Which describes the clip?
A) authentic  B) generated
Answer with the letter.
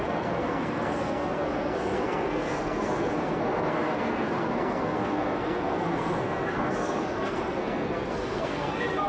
B